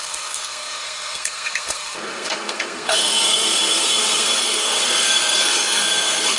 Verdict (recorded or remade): remade